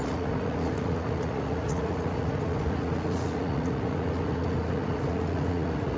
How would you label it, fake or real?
fake